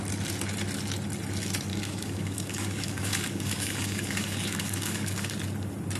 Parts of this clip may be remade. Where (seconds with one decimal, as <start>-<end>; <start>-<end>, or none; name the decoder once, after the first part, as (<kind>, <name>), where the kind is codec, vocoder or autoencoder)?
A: 1.7-5.3 (codec, DAC)